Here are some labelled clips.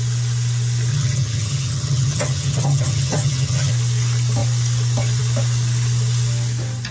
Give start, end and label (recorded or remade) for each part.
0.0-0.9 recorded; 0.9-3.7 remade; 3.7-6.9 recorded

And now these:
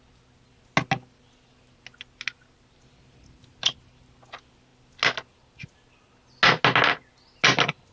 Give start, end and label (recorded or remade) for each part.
0.0-7.9 recorded

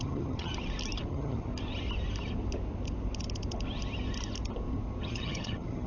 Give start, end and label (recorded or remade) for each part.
0.0-0.5 remade; 0.5-1.1 recorded; 1.1-1.5 remade; 1.5-5.0 recorded; 5.0-5.9 remade

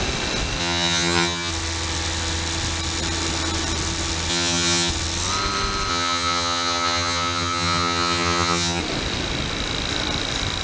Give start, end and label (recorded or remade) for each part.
0.0-0.6 recorded; 0.6-1.5 remade; 1.5-4.3 recorded; 4.3-4.9 remade; 4.9-5.9 recorded; 5.9-8.8 remade; 8.8-10.6 recorded